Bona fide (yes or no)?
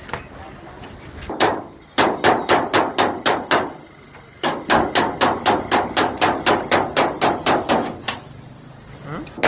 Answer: yes